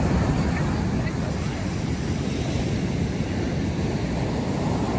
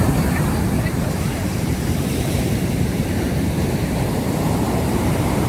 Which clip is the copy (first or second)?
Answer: second